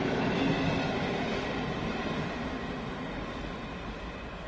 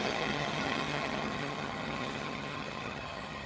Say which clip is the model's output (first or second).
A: second